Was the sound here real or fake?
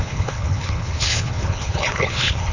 fake